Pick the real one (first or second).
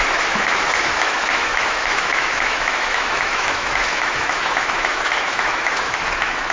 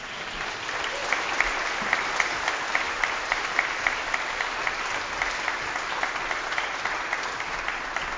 second